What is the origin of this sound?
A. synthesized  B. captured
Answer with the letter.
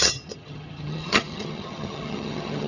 A